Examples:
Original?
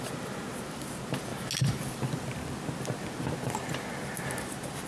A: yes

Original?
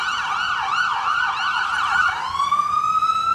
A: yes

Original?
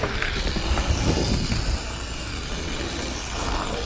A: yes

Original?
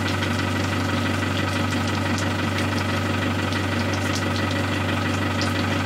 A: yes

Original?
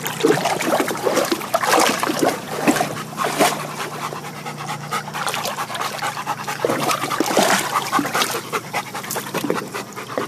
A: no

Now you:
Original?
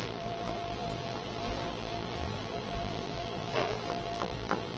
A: no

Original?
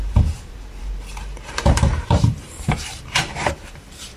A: no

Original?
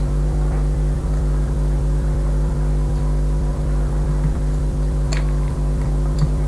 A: no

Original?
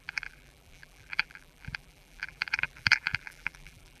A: no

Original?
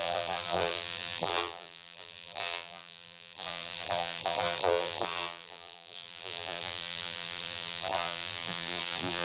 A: no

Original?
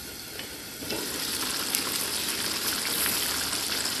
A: yes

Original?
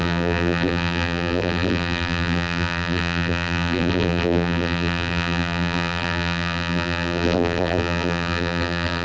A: no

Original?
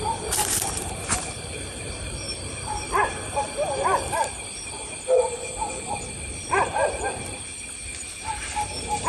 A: no